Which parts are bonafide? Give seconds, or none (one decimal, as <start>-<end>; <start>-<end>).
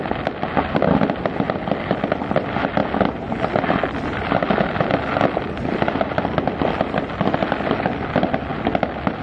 0.0-9.2